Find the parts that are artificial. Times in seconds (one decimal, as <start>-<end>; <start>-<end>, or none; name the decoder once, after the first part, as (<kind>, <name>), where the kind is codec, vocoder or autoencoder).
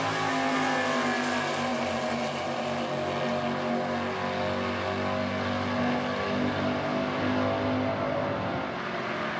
1.7-2.6 (vocoder, BigVGAN v2)